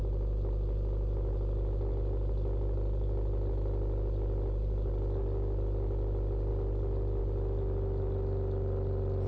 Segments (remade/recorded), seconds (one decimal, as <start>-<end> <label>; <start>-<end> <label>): 0.0-9.3 recorded